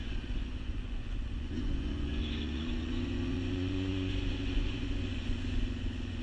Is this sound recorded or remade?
remade